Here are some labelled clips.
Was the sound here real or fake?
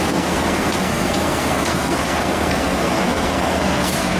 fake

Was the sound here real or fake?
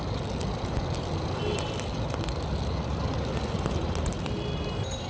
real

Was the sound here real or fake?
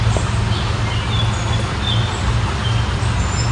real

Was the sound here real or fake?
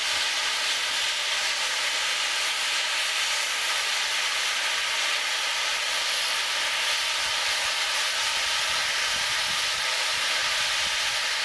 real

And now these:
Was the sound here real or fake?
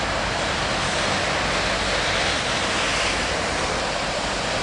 fake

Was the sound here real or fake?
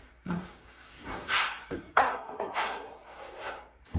fake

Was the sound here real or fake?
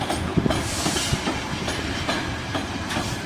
real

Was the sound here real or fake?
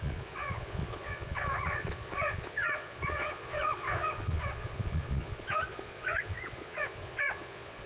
fake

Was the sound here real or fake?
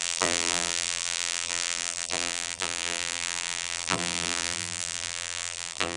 fake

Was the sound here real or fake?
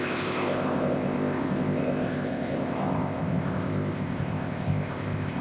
fake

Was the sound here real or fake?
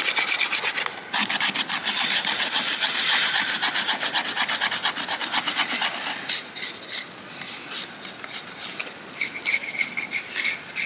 real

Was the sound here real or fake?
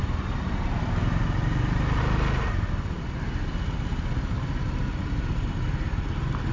real